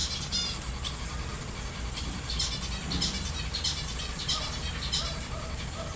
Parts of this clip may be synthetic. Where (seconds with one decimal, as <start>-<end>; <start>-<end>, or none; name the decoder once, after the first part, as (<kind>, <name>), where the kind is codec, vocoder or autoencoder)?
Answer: none